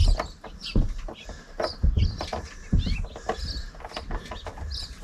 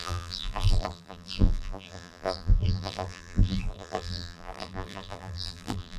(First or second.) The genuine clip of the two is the first